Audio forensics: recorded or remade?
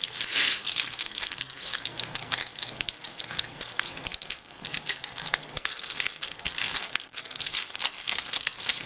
remade